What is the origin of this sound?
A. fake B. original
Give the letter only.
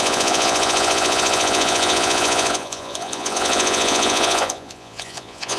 A